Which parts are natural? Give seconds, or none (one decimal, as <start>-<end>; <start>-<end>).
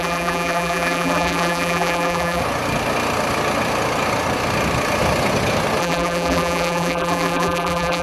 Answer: 2.4-5.8